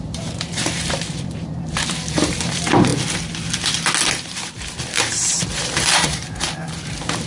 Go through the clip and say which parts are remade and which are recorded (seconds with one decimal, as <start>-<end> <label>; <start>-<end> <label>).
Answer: 0.0-2.9 remade; 2.9-4.1 recorded; 4.1-7.3 remade

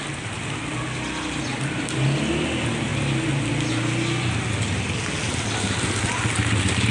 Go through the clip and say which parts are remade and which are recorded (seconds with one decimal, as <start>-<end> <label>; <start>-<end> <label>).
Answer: 0.0-6.9 recorded

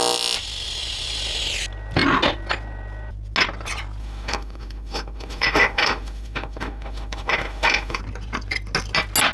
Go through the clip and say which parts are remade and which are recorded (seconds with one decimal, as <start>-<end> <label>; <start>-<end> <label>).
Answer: 0.0-4.0 recorded; 4.0-8.0 remade; 8.0-9.3 recorded

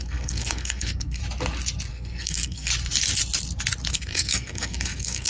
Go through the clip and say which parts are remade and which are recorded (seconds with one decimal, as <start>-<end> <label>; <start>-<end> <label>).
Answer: 0.0-1.2 remade; 1.2-1.9 recorded; 1.9-2.7 remade; 2.7-3.9 recorded; 3.9-5.3 remade

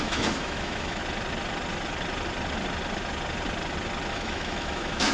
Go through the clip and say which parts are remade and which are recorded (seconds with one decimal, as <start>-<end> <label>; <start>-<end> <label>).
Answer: 0.0-1.0 remade; 1.0-4.1 recorded; 4.1-5.1 remade

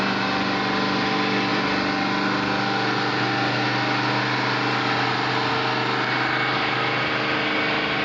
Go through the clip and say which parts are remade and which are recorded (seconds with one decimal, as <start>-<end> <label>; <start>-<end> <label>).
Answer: 0.0-8.0 recorded

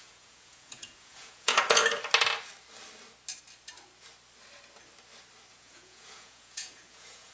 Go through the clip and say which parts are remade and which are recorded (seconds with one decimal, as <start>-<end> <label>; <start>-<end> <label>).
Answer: 0.0-1.8 remade; 1.8-5.5 recorded; 5.5-7.3 remade